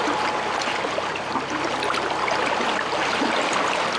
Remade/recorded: recorded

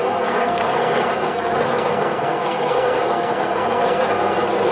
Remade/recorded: remade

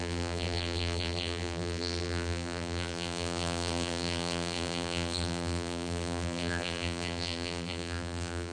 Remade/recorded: remade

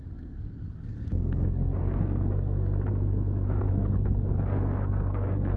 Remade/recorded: remade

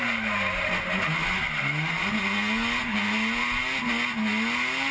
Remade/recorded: recorded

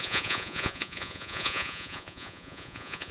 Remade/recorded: remade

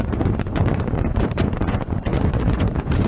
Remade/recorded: remade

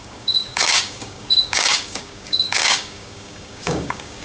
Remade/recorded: remade